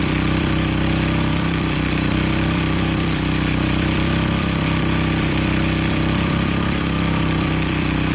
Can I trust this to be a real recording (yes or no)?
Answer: no